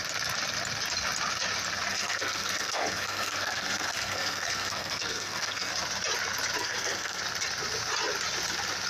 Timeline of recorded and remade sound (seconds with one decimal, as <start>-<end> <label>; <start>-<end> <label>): 0.0-1.9 recorded; 1.9-5.7 remade; 5.7-6.6 recorded; 6.6-7.2 remade; 7.2-8.9 recorded